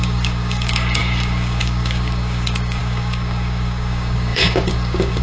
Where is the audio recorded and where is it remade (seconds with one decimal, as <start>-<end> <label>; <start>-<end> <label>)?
0.0-5.2 remade